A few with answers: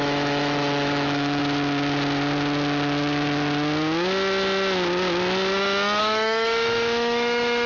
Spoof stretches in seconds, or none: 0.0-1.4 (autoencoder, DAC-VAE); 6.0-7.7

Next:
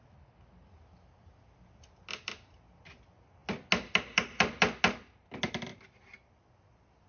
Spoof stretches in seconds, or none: none

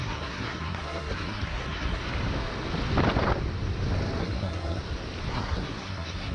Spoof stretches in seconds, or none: 0.0-2.0 (codec, SNAC); 4.2-4.8; 5.3-6.3

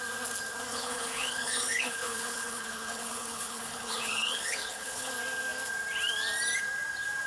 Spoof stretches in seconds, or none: 0.7-5.1 (codec, HILCodec)

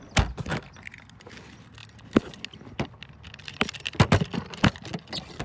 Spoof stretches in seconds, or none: none

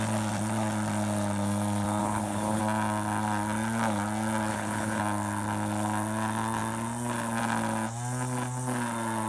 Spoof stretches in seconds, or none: 2.0-2.6 (codec, HILCodec); 4.5-5.0

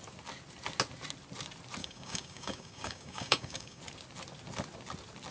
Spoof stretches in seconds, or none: 1.8-3.8 (codec, DAC)

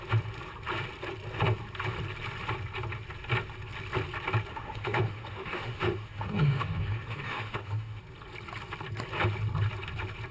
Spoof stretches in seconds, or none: 4.5-8.0 (autoencoder, DAC-VAE)